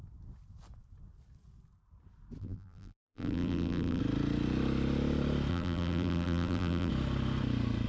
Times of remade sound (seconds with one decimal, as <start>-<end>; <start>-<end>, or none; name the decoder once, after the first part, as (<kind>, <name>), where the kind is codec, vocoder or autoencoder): 2.4-4.0 (vocoder, BigVGAN v2); 5.5-6.9